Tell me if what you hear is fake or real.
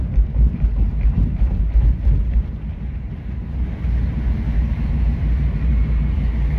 fake